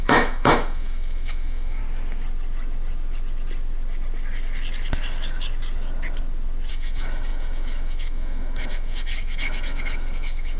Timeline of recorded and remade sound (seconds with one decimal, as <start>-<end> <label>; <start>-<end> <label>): 0.0-1.8 remade; 1.8-6.7 recorded; 6.7-10.6 remade